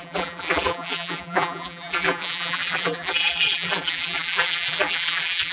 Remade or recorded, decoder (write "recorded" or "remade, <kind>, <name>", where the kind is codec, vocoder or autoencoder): remade, vocoder, BigVGAN v2